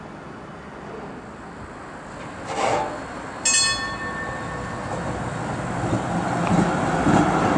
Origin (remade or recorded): recorded